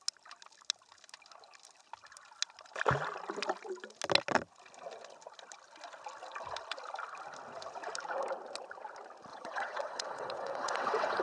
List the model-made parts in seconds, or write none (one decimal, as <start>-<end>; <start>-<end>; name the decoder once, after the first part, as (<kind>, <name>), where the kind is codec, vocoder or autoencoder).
9.3-11.2 (vocoder, WaveNeXt)